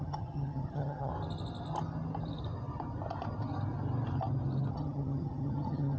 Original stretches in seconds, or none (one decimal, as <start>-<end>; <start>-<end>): 1.1-4.7